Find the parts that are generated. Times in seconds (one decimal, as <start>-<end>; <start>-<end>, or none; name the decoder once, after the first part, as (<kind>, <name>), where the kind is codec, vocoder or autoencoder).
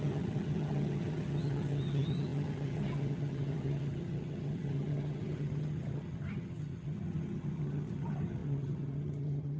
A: 0.0-9.6 (vocoder, HiFi-GAN)